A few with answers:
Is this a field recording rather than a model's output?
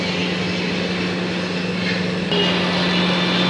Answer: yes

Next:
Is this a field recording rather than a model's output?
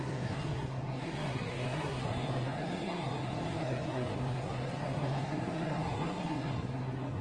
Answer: no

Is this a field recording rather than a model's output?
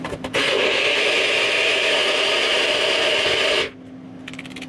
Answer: yes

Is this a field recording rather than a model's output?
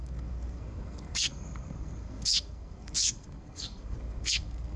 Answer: no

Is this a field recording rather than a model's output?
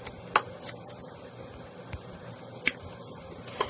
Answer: yes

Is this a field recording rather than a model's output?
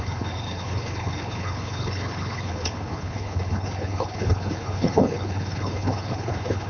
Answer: no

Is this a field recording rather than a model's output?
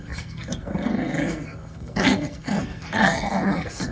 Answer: no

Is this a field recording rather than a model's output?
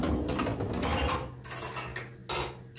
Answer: yes